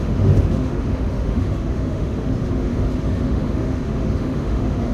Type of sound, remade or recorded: remade